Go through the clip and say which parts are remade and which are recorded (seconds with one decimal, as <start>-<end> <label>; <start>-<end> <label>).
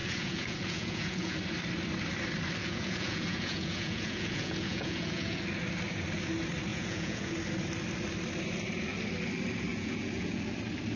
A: 0.0-1.4 remade; 1.4-2.6 recorded; 2.6-5.4 remade; 5.4-6.7 recorded; 6.7-7.4 remade; 7.4-9.7 recorded; 9.7-10.4 remade; 10.4-11.0 recorded